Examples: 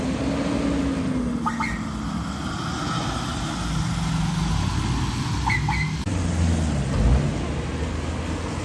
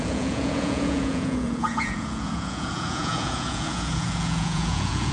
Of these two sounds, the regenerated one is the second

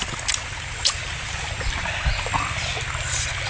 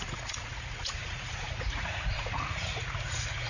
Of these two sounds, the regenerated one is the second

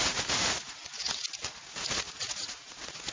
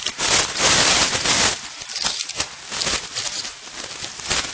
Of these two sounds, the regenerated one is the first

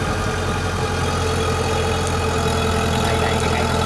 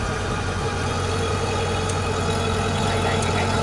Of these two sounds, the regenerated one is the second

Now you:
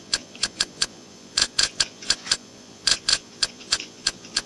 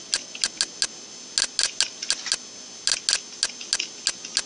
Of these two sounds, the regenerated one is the first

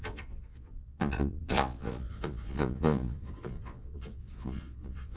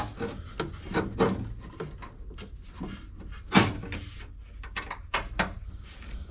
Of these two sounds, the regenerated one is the first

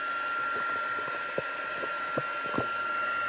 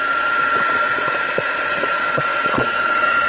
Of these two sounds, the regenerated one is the second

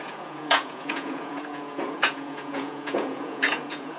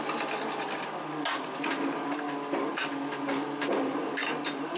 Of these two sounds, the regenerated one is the first